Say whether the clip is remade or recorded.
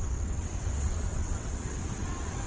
remade